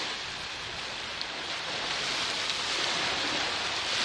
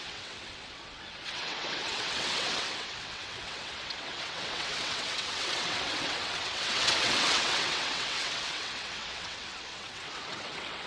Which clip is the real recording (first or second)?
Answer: first